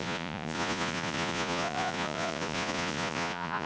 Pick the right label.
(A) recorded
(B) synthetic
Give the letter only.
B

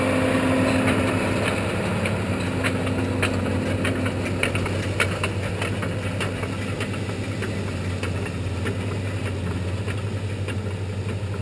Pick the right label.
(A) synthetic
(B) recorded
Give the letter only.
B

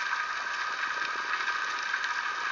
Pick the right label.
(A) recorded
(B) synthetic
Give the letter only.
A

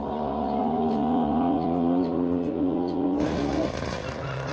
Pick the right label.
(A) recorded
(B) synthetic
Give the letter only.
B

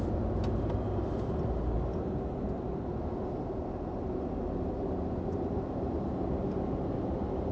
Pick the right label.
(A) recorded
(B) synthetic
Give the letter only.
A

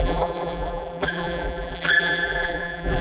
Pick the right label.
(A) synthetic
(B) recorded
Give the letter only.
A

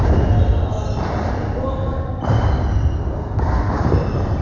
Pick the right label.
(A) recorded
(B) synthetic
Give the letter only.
A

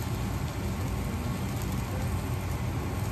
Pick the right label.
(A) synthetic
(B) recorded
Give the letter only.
B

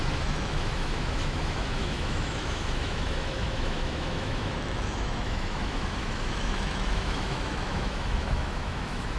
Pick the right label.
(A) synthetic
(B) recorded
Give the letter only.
A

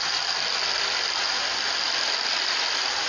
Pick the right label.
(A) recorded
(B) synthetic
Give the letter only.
A